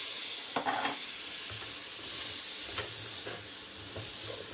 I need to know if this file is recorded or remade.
recorded